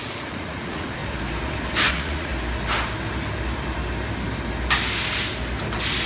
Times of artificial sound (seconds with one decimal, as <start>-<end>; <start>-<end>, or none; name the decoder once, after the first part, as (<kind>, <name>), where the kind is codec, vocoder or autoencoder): 0.0-1.0 (vocoder, Vocos); 1.9-2.3